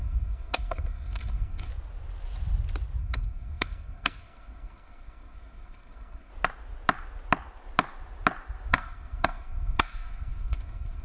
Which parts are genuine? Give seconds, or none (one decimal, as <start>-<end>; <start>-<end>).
1.7-3.0; 6.3-8.7